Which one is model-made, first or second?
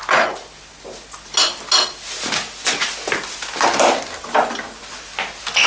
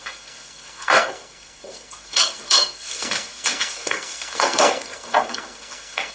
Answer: second